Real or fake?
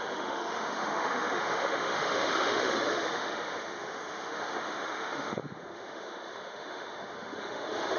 fake